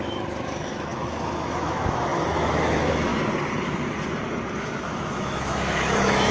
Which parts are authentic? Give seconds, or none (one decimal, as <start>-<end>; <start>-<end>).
3.1-4.6